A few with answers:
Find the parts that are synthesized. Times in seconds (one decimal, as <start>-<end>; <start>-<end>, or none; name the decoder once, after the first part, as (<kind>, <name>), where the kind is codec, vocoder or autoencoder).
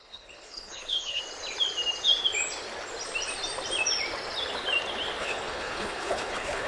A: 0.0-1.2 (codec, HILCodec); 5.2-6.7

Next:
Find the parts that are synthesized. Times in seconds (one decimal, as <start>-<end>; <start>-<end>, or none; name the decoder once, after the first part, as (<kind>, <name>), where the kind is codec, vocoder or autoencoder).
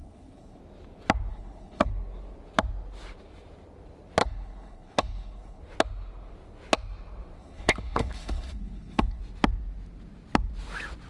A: 0.0-0.6 (codec, HILCodec); 1.3-1.9; 4.2-5.6; 7.4-9.2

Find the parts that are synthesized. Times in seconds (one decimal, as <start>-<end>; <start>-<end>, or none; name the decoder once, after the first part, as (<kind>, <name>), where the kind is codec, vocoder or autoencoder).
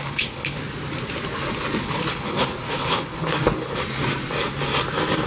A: 0.0-0.6 (codec, HILCodec); 1.8-3.8